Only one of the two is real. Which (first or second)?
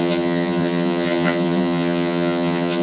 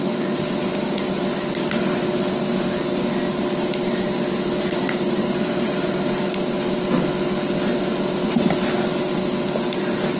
second